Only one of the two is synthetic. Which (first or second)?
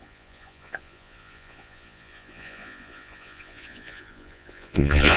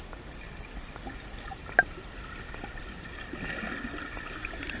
first